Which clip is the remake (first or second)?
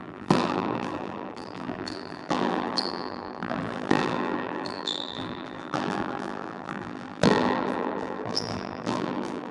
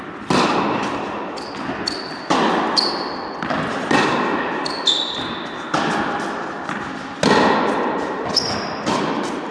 first